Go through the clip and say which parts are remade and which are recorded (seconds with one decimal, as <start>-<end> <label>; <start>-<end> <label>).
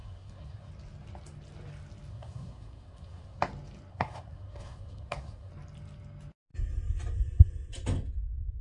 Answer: 0.0-0.7 remade; 0.7-2.1 recorded; 2.1-3.4 remade; 3.4-3.9 recorded; 3.9-5.5 remade; 5.5-8.6 recorded